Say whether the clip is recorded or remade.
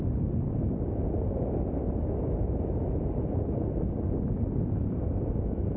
recorded